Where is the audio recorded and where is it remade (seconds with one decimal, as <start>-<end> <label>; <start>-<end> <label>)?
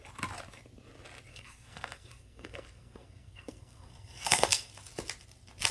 0.0-1.3 recorded; 1.3-4.7 remade; 4.7-5.7 recorded